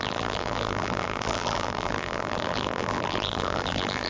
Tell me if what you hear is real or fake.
fake